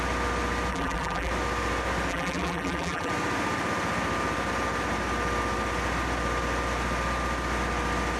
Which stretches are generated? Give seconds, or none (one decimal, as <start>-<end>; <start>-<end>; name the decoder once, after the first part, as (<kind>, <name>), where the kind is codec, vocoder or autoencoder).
0.7-1.3 (vocoder, BigVGAN v2); 2.1-3.1